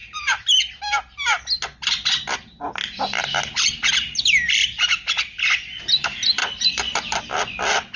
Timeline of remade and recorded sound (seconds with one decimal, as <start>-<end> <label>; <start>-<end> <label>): 0.0-8.0 recorded